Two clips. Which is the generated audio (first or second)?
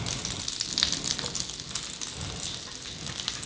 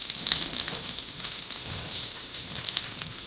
second